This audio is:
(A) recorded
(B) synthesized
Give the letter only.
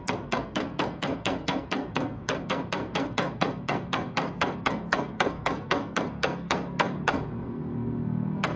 B